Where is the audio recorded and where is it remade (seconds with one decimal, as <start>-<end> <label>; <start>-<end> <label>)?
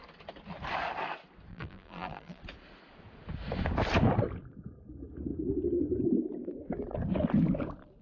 0.0-1.5 recorded; 1.5-2.4 remade; 2.4-8.0 recorded